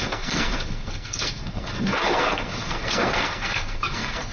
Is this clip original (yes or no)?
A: no